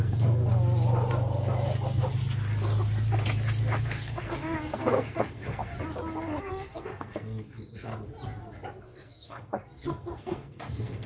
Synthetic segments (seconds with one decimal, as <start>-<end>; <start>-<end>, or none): 0.0-0.4; 3.8-5.7; 6.4-7.9; 8.8-11.1

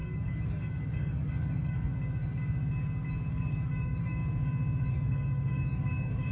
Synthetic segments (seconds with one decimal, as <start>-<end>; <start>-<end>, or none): 0.0-1.9; 3.3-4.2; 4.9-6.3

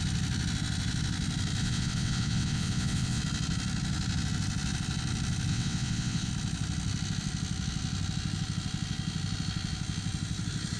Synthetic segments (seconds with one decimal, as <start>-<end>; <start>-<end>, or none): 1.6-3.2; 5.5-6.3

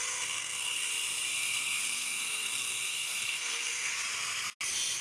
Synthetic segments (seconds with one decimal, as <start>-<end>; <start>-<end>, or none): 0.0-0.9; 1.3-3.9

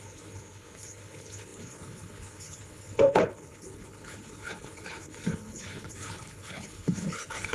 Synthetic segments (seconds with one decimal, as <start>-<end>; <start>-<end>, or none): 0.0-7.5

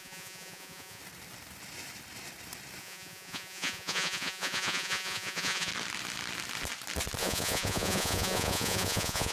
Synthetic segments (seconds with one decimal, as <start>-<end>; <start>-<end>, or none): 0.0-1.0; 2.8-5.7; 7.2-9.3

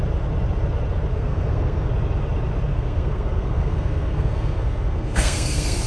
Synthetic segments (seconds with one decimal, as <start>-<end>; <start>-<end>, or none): 1.1-1.9; 2.7-5.9